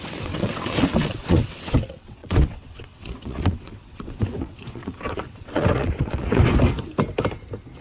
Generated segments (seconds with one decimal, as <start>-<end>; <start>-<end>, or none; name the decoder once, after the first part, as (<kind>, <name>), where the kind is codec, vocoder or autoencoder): 0.0-6.4 (vocoder, WaveNeXt)